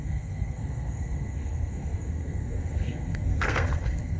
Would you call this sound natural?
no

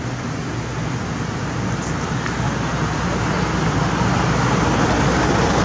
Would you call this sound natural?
yes